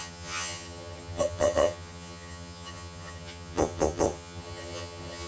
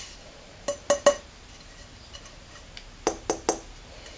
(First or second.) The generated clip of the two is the first